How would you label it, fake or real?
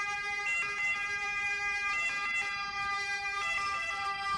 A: fake